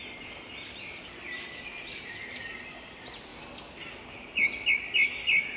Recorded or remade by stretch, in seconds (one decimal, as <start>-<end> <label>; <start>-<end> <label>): 0.0-5.6 recorded

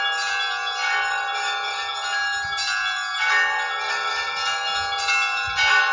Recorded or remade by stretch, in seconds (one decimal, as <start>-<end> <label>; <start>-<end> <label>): 0.0-5.9 recorded

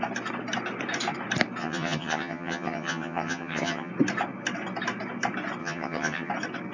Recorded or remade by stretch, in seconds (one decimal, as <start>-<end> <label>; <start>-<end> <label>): 0.0-1.6 recorded; 1.6-3.9 remade; 3.9-5.6 recorded; 5.6-6.3 remade; 6.3-6.7 recorded

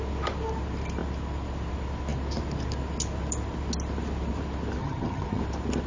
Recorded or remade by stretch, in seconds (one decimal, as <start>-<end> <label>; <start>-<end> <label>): 0.0-4.8 recorded; 4.8-5.4 remade; 5.4-5.9 recorded

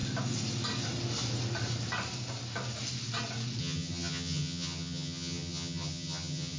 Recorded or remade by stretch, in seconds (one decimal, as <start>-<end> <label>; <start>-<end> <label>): 0.0-3.6 recorded; 3.6-6.6 remade

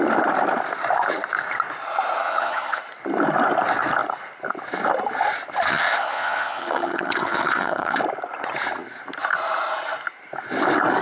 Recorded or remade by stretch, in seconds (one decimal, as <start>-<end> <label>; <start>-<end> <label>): 0.0-2.2 recorded; 2.2-2.8 remade; 2.8-5.7 recorded; 5.7-8.0 remade; 8.0-11.0 recorded

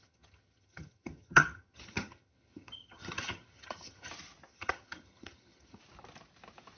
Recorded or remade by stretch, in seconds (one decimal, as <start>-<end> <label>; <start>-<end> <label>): 0.0-4.1 remade; 4.1-4.5 recorded; 4.5-5.8 remade; 5.8-6.8 recorded

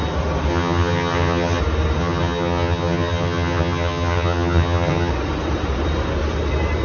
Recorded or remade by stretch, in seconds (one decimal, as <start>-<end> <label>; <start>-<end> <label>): 0.0-0.5 recorded; 0.5-1.6 remade; 1.6-2.0 recorded; 2.0-5.1 remade; 5.1-6.8 recorded